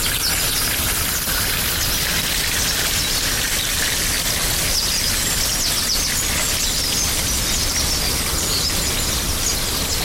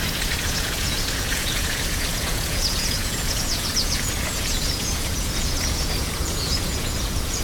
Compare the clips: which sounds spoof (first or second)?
second